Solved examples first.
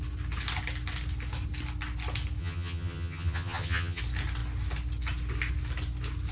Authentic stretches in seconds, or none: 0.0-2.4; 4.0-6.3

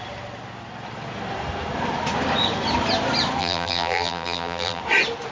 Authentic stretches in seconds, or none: 0.0-3.4; 4.8-5.3

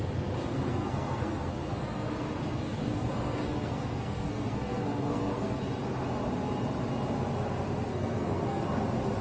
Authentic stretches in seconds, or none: 0.0-0.5; 5.6-7.9; 8.6-9.2